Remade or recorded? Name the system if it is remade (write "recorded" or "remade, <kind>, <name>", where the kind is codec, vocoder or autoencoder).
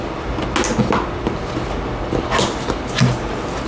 recorded